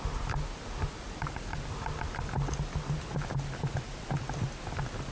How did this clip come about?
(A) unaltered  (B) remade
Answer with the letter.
A